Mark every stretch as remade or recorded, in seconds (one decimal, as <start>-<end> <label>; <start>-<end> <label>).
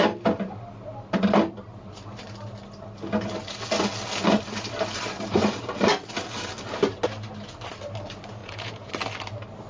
0.0-8.4 recorded; 8.4-8.9 remade; 8.9-9.7 recorded